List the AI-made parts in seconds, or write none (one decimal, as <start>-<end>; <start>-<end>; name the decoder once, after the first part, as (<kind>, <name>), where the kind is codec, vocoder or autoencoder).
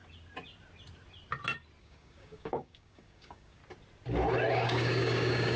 1.8-3.6 (codec, DAC); 4.5-5.6